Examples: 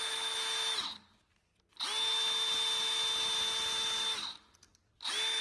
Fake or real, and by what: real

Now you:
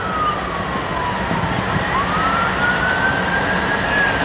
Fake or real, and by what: real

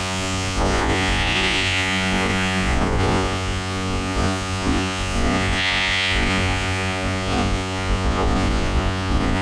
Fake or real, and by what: fake, vocoder, Vocos